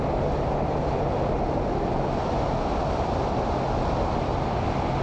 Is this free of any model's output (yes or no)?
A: yes